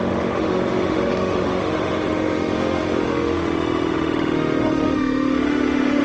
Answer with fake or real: fake